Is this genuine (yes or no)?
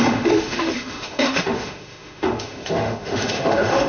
no